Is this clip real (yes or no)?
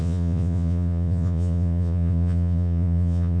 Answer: no